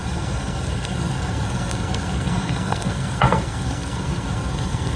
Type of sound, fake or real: fake